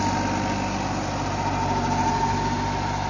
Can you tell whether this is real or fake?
real